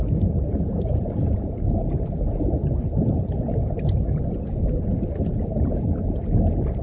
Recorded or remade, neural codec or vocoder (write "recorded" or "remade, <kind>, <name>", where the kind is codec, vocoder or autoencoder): recorded